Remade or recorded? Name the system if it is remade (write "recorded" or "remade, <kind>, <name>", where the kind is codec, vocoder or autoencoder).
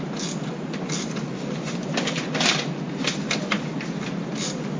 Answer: recorded